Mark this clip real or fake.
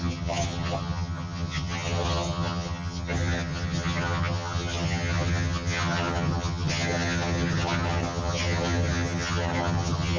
fake